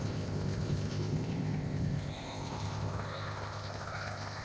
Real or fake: fake